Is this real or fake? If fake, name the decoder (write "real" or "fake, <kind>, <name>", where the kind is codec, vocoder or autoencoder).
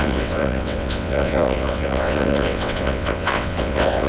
fake, vocoder, WaveNeXt